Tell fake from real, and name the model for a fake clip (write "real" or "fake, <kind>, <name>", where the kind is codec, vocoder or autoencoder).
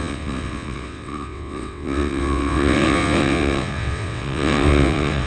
fake, vocoder, WaveNeXt